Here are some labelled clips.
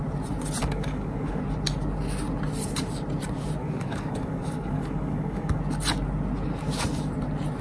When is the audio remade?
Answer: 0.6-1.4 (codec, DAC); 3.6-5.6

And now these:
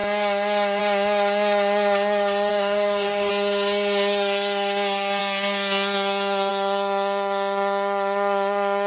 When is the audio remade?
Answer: 2.5-3.3 (codec, DAC)

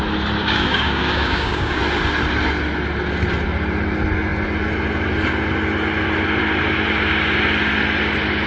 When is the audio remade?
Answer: 0.4-1.8 (codec, DAC)

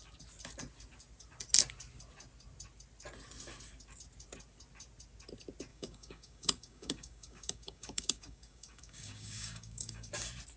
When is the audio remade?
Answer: 5.7-10.1 (codec, DAC)

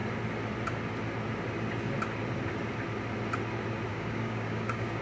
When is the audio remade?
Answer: 3.9-5.0 (codec, DAC)

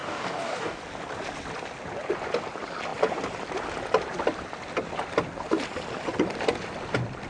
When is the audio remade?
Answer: 0.0-0.8 (codec, DAC)

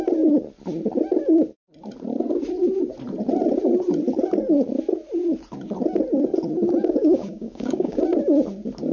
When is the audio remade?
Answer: 6.8-8.0 (codec, DAC)

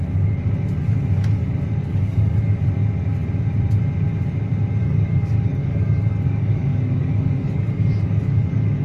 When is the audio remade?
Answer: 1.8-2.4 (codec, DAC); 4.8-8.8